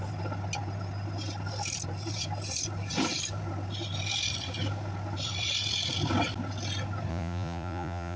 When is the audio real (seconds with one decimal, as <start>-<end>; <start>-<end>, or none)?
0.0-7.1